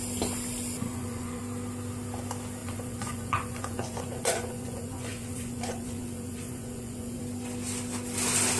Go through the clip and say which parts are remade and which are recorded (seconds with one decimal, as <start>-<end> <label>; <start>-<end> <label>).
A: 0.0-0.8 recorded; 0.8-1.4 remade; 1.4-2.6 recorded; 2.6-7.2 remade; 7.2-8.6 recorded

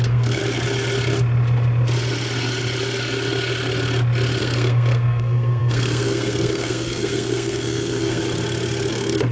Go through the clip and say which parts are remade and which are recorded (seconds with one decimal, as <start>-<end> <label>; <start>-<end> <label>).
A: 0.0-0.4 remade; 0.4-4.4 recorded; 4.4-8.2 remade; 8.2-8.9 recorded; 8.9-9.3 remade

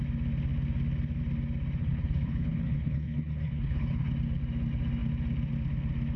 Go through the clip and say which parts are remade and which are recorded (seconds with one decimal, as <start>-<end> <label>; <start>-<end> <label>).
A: 0.0-1.8 recorded; 1.8-4.1 remade; 4.1-6.2 recorded

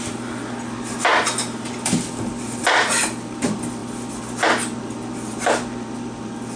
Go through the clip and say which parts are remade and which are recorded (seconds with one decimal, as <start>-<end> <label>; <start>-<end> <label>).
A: 0.0-6.6 recorded

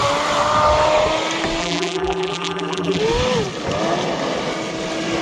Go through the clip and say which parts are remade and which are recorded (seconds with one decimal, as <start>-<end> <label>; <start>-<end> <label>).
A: 0.0-1.6 recorded; 1.6-3.0 remade; 3.0-5.2 recorded

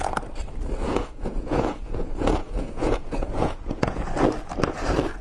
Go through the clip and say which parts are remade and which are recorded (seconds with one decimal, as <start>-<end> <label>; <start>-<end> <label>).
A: 0.0-0.9 recorded; 0.9-4.0 remade; 4.0-5.2 recorded

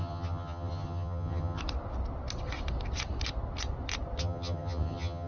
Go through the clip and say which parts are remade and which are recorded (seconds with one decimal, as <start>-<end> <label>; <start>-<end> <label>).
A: 0.0-1.6 remade; 1.6-4.2 recorded; 4.2-5.3 remade

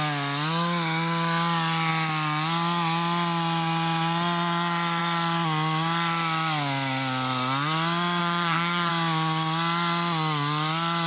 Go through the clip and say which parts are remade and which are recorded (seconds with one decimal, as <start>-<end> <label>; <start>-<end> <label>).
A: 0.0-8.2 recorded; 8.2-8.9 remade; 8.9-11.1 recorded